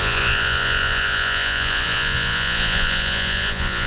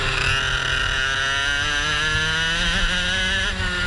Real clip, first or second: second